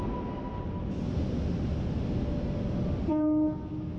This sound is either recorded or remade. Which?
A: recorded